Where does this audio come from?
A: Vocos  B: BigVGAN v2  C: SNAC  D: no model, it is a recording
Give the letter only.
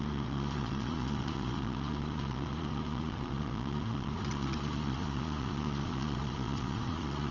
A